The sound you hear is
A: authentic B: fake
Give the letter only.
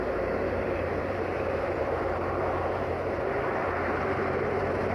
B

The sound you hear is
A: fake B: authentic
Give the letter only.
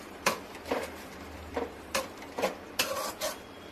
A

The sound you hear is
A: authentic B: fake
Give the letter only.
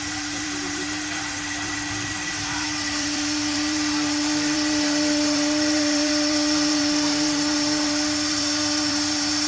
B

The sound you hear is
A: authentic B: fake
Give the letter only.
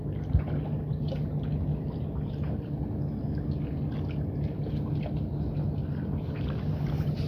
A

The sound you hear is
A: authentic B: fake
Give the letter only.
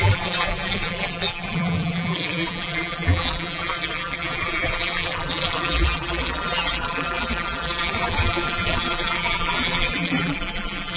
B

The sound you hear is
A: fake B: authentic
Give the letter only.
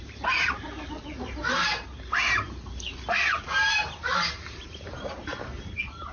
A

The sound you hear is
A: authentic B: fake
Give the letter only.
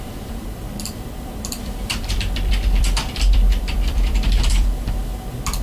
B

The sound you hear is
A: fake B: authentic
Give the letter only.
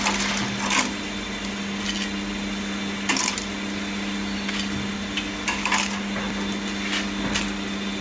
B